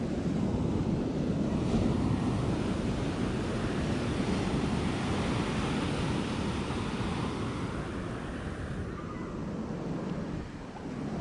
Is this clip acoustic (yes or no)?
yes